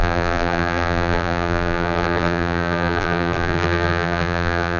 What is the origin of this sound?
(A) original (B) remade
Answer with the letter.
B